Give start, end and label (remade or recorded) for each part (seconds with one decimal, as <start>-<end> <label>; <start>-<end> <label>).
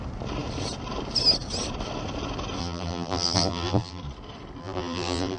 0.0-2.6 recorded; 2.6-4.0 remade; 4.0-4.6 recorded; 4.6-5.4 remade